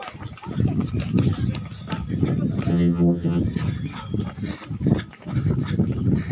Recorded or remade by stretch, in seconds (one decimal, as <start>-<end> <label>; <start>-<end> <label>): 0.0-2.7 recorded; 2.7-3.4 remade; 3.4-6.3 recorded